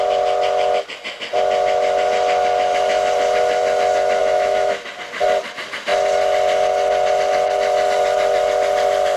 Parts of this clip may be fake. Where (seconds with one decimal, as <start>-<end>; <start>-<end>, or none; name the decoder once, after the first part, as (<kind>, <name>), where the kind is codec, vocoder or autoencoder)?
4.2-4.9 (autoencoder, DAC-VAE)